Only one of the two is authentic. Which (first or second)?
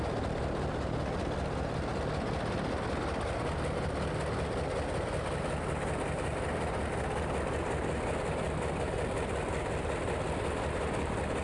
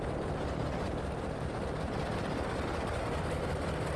first